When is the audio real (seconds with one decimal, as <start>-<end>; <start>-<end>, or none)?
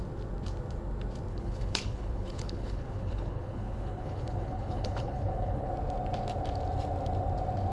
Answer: 0.0-1.3; 5.7-7.7